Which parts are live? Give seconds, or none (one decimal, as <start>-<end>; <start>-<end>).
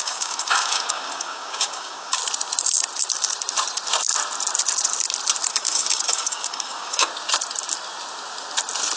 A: 2.2-5.5; 7.1-9.0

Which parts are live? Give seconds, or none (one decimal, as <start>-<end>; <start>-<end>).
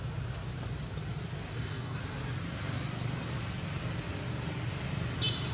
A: 0.0-1.5; 2.0-5.5